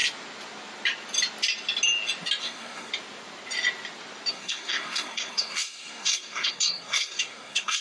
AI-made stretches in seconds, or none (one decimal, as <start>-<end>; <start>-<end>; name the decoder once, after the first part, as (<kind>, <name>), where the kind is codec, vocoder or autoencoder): 2.4-2.9 (codec, SNAC); 4.3-7.8

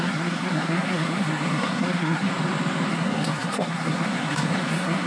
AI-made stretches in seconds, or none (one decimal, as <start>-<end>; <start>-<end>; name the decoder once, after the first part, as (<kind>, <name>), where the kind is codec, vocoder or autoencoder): 0.0-2.3 (codec, SNAC); 2.9-5.1

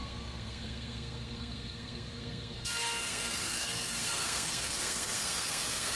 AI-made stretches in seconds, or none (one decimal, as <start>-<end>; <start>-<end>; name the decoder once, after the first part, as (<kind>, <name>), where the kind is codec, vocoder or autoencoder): 0.0-6.0 (codec, SNAC)